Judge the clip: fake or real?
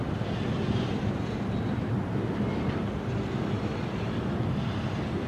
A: real